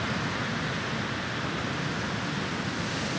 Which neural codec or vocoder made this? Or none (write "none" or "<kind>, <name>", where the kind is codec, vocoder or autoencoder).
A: none